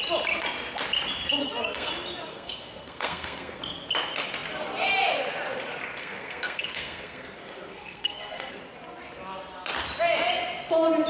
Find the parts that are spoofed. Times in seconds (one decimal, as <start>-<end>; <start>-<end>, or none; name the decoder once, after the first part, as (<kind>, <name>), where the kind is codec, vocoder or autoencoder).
1.4-1.9 (codec, SNAC); 2.3-3.6; 6.0-8.6